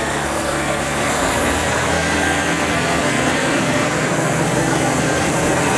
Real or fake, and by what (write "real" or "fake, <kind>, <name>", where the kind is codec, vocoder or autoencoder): fake, codec, SNAC